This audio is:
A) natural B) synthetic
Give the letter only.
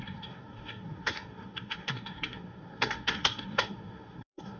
B